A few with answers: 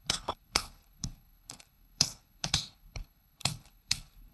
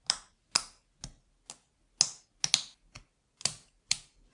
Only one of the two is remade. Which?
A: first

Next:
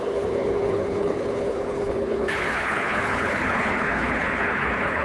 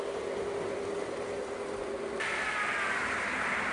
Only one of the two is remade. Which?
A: first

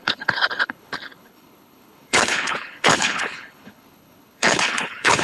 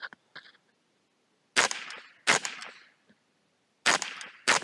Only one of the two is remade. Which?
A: first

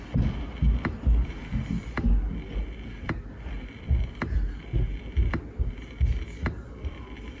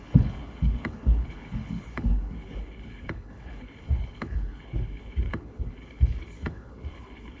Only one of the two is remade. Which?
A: second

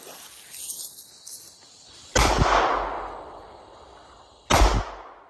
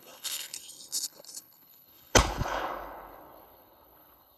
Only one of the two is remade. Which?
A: second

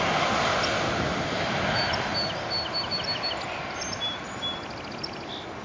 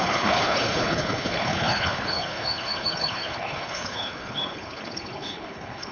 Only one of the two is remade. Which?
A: second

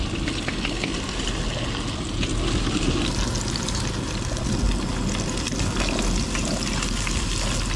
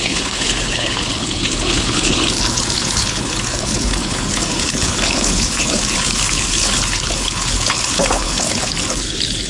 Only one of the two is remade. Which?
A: second